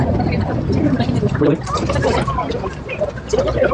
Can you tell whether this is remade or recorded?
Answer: recorded